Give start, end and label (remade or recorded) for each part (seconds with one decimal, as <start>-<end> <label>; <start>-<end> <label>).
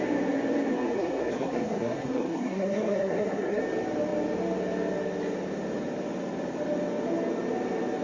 0.0-0.7 recorded; 0.7-3.6 remade; 3.6-8.0 recorded